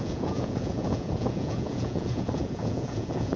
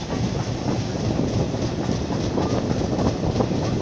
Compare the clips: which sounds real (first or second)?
second